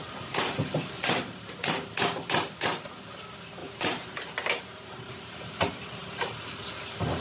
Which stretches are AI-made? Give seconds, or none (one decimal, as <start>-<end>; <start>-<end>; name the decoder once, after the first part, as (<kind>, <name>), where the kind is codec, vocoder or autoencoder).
0.0-0.7 (vocoder, BigVGAN v2); 3.6-6.6